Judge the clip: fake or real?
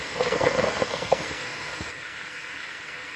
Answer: fake